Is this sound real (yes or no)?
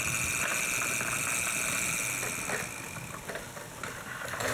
yes